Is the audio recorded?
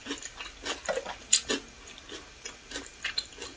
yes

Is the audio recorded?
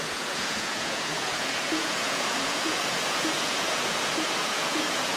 no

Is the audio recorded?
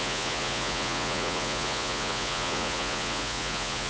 no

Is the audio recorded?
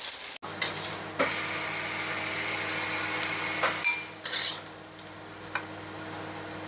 yes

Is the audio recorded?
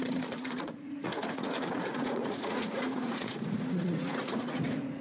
no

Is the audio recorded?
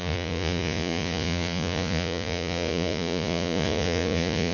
no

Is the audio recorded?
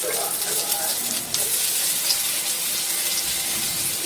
yes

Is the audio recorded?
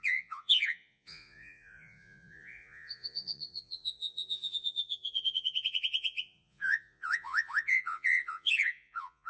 no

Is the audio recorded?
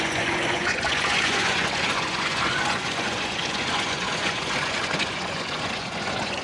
no